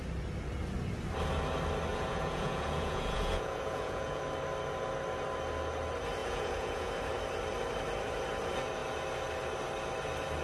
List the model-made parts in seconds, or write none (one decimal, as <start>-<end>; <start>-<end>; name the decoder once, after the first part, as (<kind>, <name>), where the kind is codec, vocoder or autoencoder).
1.9-4.2 (vocoder, Vocos); 6.2-6.9

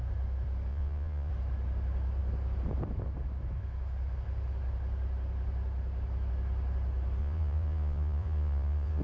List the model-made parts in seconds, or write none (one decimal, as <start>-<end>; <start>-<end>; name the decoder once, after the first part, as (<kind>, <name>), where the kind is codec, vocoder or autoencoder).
0.7-1.3 (vocoder, Vocos); 7.2-9.0

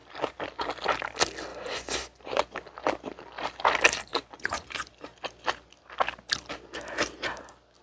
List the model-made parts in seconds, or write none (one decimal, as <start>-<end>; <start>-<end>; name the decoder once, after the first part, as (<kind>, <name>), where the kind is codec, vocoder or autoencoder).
1.5-2.4 (vocoder, Vocos); 4.1-4.9

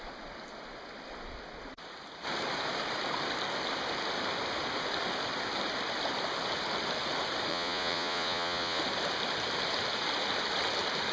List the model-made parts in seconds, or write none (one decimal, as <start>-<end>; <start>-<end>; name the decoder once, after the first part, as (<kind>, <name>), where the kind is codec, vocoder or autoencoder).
7.5-8.8 (vocoder, Vocos)

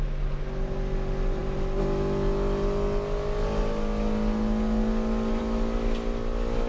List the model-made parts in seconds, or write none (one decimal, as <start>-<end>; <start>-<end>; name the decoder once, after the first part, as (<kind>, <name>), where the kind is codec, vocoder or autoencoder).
none

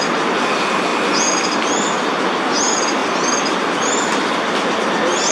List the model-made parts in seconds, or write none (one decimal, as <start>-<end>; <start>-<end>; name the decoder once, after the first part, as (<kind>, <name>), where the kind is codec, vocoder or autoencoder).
none

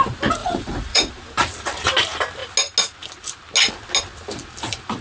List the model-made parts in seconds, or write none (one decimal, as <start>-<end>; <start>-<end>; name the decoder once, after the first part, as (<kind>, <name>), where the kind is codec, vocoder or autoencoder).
0.4-1.1 (vocoder, Vocos)